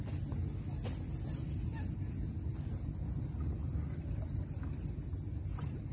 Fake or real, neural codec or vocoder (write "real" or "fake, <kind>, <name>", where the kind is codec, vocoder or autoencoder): real